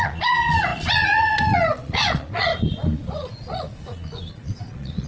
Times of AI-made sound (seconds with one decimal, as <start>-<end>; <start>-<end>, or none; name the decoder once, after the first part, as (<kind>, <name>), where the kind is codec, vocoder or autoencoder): 0.0-5.1 (vocoder, Vocos)